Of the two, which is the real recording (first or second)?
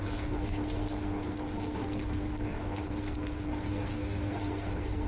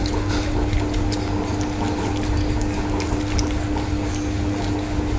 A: second